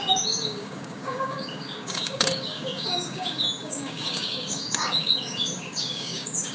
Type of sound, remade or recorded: remade